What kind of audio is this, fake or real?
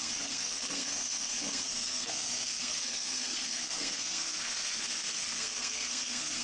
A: fake